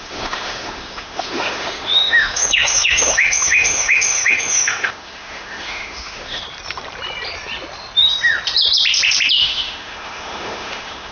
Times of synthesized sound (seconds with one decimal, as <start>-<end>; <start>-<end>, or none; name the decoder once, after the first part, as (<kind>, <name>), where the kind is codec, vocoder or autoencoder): 0.0-6.4 (autoencoder, DAC-VAE); 9.4-11.1